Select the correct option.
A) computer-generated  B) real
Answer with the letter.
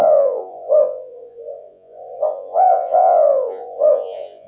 A